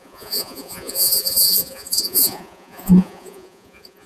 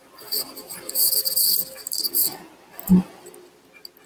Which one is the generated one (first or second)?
first